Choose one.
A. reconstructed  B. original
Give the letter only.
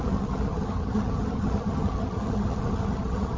A